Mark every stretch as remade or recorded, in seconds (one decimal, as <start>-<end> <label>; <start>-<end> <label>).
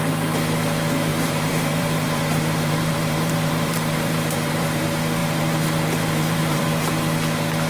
0.0-1.1 recorded; 1.1-4.8 remade; 4.8-5.2 recorded; 5.2-6.9 remade; 6.9-7.7 recorded